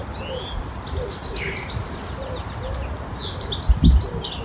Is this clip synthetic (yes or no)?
no